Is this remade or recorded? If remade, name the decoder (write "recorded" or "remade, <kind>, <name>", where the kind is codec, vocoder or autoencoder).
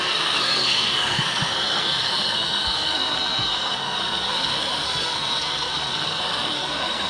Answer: remade, codec, SNAC